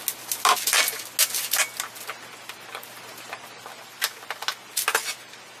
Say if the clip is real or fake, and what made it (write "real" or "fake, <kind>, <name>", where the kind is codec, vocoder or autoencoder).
real